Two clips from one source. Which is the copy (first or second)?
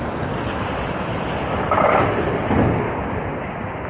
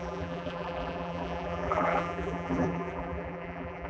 second